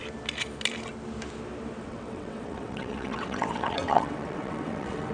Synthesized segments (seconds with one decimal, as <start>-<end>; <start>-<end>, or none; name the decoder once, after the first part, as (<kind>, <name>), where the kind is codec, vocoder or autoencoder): 1.8-5.1 (vocoder, WaveNeXt)